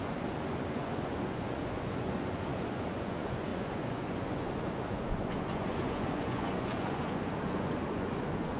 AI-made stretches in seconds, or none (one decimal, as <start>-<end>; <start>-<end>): 0.0-8.6